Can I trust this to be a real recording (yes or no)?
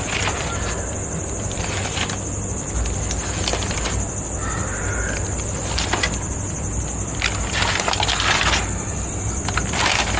yes